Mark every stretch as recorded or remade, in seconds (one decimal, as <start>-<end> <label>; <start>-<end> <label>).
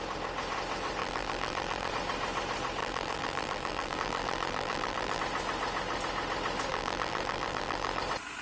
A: 0.0-1.0 recorded; 1.0-1.9 remade; 1.9-2.8 recorded; 2.8-5.2 remade; 5.2-6.7 recorded; 6.7-8.0 remade; 8.0-8.4 recorded